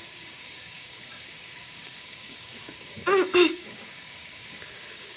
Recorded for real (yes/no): no